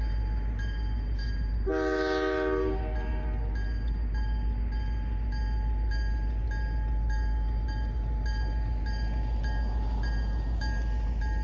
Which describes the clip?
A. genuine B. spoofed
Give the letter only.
A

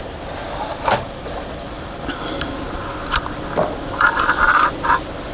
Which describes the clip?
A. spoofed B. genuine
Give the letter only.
B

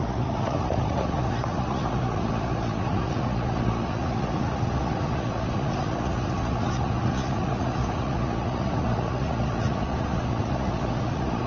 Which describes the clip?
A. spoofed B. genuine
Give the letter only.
A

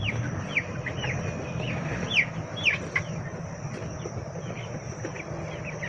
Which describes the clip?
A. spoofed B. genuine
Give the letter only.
B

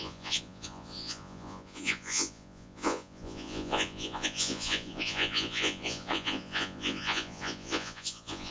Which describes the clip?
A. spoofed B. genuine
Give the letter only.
A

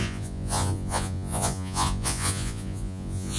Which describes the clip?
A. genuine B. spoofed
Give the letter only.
B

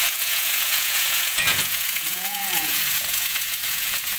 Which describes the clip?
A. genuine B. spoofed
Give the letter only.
B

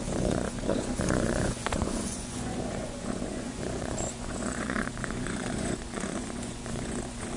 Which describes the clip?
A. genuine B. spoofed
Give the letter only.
B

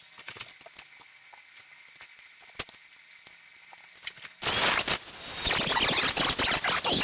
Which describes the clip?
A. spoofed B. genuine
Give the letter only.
B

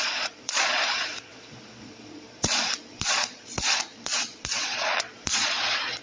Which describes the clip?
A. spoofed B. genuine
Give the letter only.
A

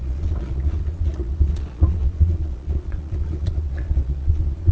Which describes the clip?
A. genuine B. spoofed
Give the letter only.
B